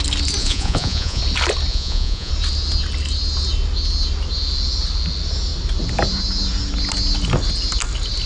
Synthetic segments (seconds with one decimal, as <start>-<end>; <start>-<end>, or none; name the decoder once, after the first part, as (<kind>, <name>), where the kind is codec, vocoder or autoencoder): 0.4-1.2 (vocoder, Vocos); 1.7-2.3